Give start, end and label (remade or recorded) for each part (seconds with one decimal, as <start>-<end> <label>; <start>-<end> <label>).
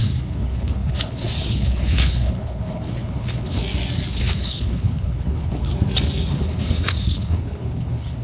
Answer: 0.0-3.6 remade; 3.6-4.1 recorded; 4.1-5.7 remade; 5.7-6.3 recorded; 6.3-8.2 remade